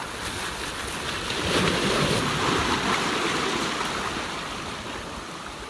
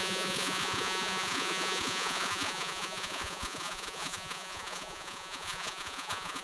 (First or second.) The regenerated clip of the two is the second